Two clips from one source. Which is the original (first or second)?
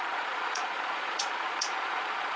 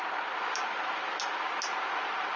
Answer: second